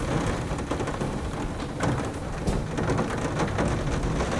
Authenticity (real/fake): real